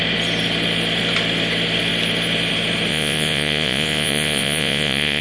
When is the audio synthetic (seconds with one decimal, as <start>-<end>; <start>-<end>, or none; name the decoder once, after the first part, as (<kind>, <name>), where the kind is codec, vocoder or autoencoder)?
2.9-5.2 (vocoder, Vocos)

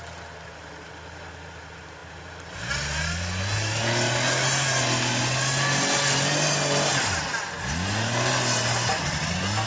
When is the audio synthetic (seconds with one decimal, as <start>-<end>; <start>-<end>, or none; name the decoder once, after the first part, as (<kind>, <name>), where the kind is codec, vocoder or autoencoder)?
none